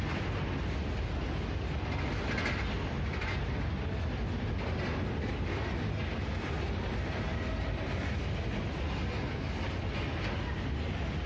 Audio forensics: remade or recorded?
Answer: recorded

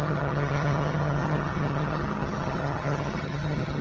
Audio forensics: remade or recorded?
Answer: remade